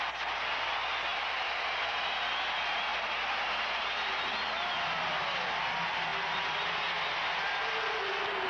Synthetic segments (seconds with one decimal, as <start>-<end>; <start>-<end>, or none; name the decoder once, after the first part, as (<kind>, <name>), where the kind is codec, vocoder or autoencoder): 1.1-1.8 (vocoder, BigVGAN v2); 2.9-4.4